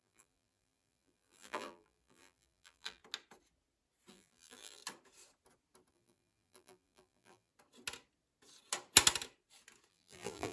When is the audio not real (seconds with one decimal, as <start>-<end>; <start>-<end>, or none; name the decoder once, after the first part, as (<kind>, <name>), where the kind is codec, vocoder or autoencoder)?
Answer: 0.0-3.0 (vocoder, BigVGAN v2); 4.1-4.8; 5.9-7.5; 9.9-10.5